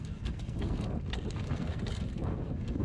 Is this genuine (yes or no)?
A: no